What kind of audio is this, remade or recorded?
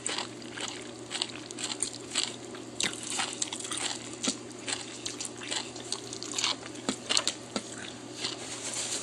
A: recorded